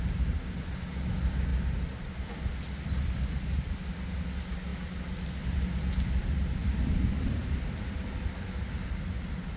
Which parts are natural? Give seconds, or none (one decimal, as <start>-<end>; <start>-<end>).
0.0-1.5; 2.3-6.6; 8.8-9.6